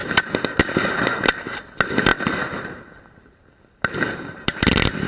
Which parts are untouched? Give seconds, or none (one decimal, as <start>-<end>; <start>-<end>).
0.0-5.1